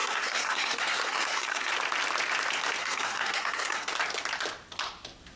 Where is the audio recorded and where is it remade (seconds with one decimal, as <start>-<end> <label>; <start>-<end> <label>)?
0.0-1.7 remade; 1.7-2.8 recorded; 2.8-3.9 remade; 3.9-5.4 recorded